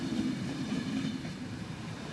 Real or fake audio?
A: fake